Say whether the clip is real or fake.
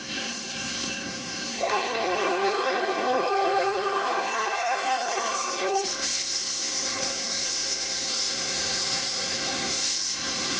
fake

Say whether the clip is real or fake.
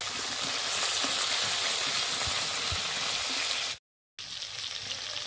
real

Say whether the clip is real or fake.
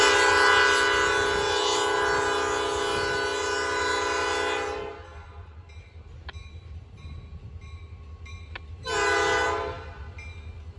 real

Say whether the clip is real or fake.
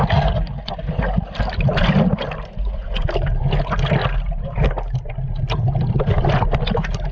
real